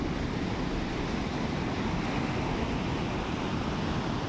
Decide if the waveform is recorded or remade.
recorded